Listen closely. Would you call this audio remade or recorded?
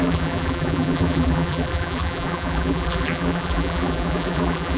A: remade